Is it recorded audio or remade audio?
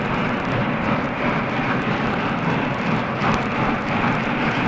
remade